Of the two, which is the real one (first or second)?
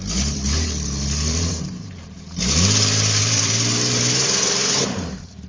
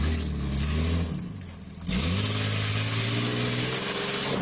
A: second